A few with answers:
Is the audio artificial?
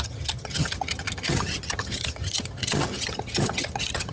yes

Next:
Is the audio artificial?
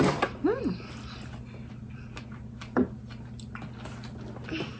no